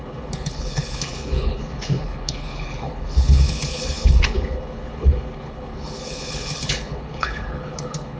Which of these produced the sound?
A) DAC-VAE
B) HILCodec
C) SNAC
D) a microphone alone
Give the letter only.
B